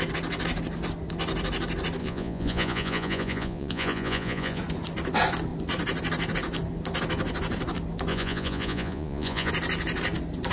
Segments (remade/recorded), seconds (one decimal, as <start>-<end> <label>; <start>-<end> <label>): 0.0-2.0 recorded; 2.0-4.6 remade; 4.6-8.1 recorded; 8.1-9.5 remade; 9.5-10.5 recorded